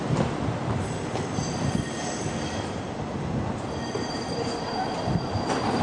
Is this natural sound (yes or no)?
no